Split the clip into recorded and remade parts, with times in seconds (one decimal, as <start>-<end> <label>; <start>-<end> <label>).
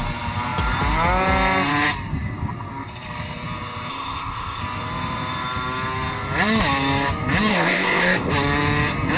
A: 0.0-3.9 recorded; 3.9-4.6 remade; 4.6-7.5 recorded; 7.5-8.3 remade; 8.3-9.2 recorded